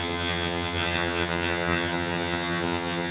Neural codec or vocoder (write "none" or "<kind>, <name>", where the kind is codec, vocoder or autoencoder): vocoder, HiFi-GAN